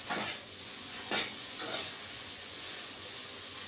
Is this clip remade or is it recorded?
remade